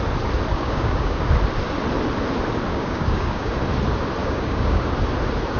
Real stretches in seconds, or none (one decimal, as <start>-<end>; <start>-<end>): 0.0-0.5; 1.2-2.7; 3.5-4.2; 4.8-5.6